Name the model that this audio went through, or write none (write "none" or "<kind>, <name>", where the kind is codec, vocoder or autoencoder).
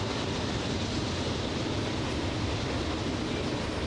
none